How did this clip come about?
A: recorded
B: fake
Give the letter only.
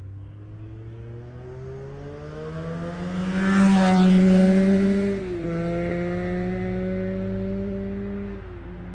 A